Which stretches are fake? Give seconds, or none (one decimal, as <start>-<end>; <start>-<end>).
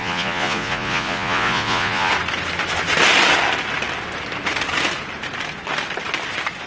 0.0-2.1